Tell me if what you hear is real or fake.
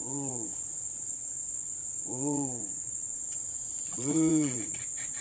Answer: fake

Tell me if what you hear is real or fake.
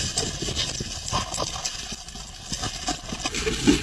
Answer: real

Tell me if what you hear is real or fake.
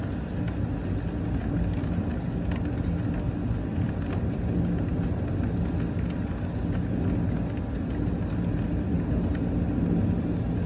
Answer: real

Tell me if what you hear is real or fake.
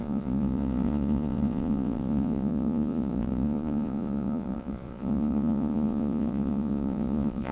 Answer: fake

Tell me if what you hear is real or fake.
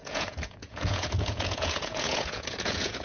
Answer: fake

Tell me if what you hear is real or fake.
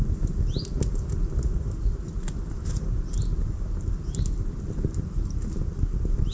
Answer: real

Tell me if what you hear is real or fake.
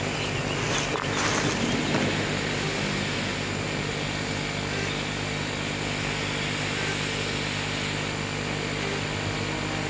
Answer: real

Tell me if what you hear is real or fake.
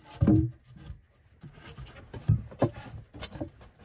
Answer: real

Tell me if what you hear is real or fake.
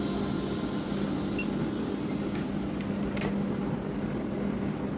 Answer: real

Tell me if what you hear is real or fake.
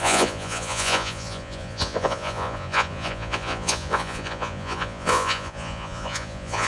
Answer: fake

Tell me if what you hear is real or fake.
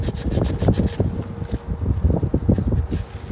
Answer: real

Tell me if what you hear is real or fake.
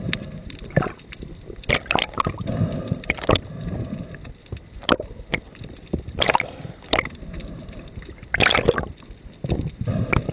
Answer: real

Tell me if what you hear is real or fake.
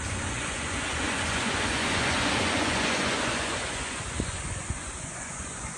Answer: fake